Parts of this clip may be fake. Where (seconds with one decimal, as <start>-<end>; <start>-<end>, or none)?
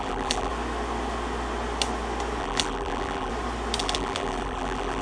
0.0-0.5; 2.4-3.3; 3.8-5.0